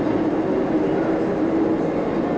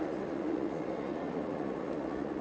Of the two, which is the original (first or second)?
first